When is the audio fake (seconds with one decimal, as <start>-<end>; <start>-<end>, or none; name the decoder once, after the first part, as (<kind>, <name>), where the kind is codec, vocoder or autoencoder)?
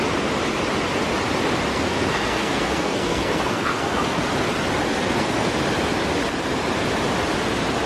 1.7-4.2 (codec, SNAC); 4.9-5.5